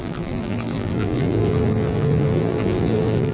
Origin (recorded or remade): remade